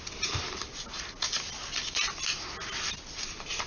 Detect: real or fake real